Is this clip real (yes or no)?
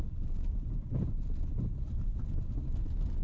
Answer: yes